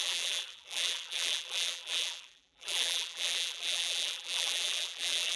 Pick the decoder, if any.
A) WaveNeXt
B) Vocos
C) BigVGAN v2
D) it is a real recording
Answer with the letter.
C